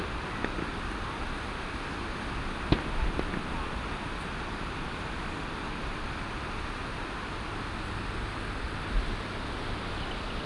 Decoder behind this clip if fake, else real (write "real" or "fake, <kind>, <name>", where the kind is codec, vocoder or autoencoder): real